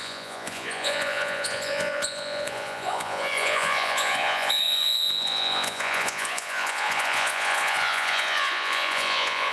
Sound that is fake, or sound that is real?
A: fake